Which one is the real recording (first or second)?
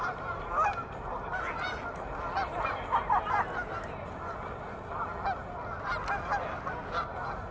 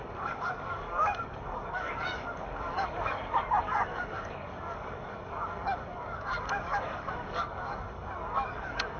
first